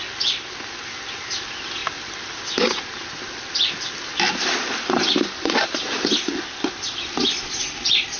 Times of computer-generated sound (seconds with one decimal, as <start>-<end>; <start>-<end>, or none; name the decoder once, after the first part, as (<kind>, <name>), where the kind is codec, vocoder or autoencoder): none